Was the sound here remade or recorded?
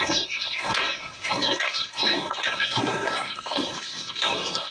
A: remade